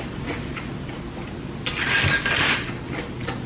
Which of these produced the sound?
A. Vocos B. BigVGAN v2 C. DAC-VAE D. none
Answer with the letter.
D